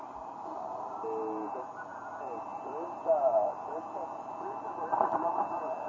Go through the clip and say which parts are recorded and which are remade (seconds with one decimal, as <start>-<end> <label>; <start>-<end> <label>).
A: 0.0-5.9 recorded